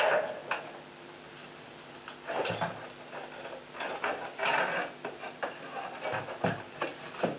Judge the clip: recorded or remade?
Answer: recorded